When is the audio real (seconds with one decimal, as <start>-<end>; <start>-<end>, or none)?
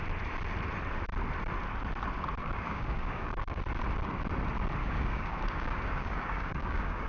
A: 0.0-2.4; 3.6-4.8